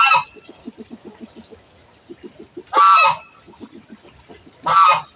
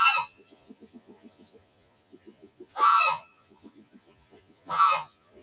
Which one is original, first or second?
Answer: first